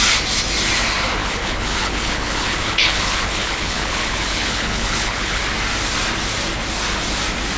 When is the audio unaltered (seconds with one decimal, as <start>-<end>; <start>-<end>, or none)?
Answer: 0.0-1.2; 5.4-7.6